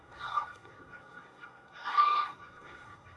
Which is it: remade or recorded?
remade